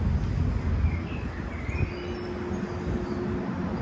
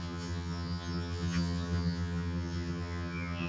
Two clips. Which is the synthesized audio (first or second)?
second